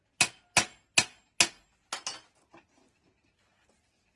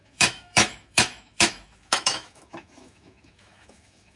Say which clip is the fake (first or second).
second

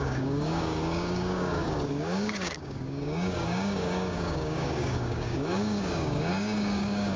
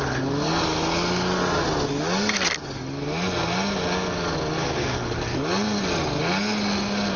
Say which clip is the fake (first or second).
first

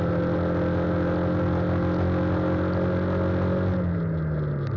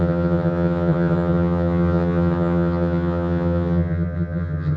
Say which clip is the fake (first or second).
second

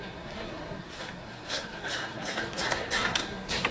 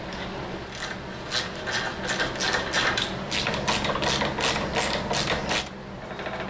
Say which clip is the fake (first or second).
first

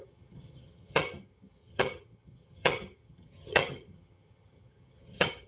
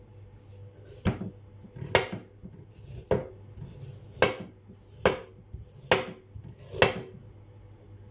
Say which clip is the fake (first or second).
first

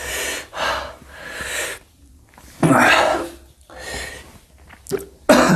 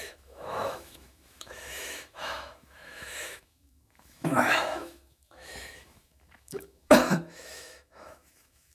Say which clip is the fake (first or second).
second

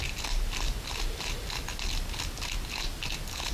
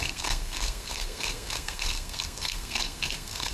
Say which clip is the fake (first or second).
second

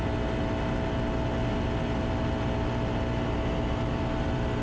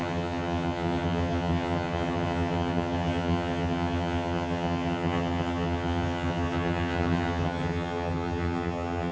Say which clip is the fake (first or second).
second